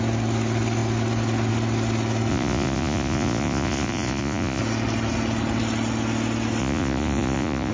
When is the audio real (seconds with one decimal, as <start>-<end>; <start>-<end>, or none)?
0.0-2.3; 4.6-6.6